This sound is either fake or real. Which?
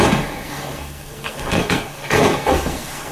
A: fake